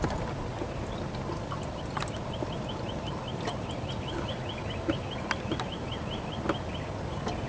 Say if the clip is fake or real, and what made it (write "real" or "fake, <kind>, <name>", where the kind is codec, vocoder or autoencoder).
real